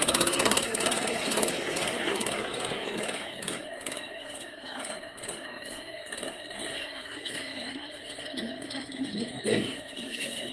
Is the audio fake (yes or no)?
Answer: yes